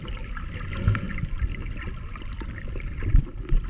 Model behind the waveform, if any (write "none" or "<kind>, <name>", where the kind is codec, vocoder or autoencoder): none